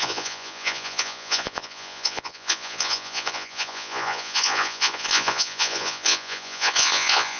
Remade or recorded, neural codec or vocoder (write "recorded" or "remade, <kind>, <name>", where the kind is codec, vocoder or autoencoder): remade, vocoder, Vocos